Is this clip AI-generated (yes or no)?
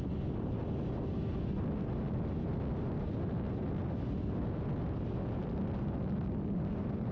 no